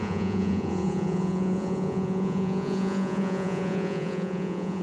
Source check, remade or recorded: remade